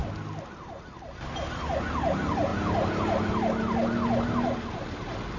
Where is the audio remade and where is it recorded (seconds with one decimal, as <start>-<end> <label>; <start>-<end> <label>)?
0.0-5.4 recorded